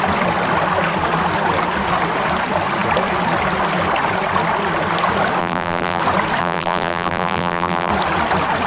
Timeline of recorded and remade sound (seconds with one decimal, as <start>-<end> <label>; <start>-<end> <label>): 0.0-5.4 recorded; 5.4-6.0 remade; 6.0-6.4 recorded; 6.4-7.9 remade; 7.9-8.7 recorded